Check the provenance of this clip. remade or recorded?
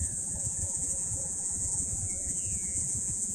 remade